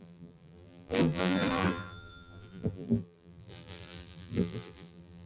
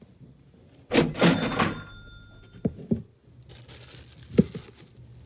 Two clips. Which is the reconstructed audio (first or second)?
first